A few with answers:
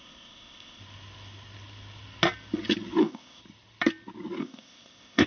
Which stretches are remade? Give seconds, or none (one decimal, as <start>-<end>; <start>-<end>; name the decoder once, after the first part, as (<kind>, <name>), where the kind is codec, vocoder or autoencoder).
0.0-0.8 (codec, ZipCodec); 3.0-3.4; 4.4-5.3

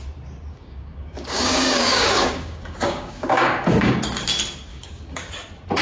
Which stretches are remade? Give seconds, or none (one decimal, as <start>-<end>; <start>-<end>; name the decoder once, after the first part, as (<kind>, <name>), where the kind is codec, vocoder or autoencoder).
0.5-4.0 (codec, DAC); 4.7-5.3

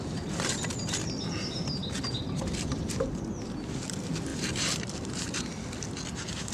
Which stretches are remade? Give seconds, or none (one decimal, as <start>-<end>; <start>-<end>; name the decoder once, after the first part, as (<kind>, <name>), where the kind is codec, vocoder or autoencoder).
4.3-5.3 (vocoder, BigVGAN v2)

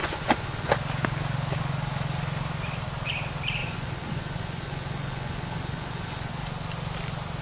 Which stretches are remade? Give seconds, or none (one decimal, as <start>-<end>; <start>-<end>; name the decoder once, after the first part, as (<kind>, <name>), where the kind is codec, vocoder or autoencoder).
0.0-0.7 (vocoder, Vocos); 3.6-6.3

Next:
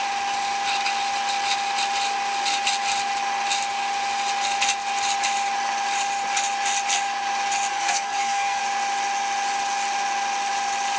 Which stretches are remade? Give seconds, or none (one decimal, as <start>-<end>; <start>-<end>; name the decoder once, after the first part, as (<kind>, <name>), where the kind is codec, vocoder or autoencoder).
7.7-8.6 (codec, SNAC)

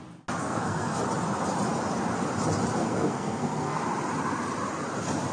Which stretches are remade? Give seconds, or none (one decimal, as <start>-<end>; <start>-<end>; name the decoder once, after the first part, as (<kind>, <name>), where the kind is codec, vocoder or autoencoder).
0.4-1.0 (codec, SNAC); 2.8-3.8

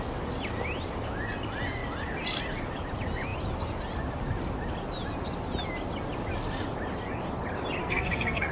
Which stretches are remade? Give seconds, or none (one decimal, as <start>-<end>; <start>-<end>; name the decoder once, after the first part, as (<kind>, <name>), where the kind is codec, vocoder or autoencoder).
7.8-8.5 (codec, SNAC)

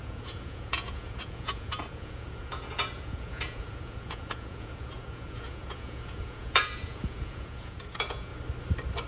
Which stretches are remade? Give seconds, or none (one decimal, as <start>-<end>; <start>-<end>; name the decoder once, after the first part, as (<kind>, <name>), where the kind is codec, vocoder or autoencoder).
0.0-8.3 (vocoder, Vocos)